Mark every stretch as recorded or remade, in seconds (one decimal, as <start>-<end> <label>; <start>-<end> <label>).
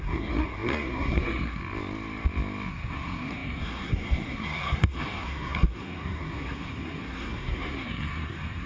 0.0-1.6 remade; 1.6-2.7 recorded; 2.7-8.7 remade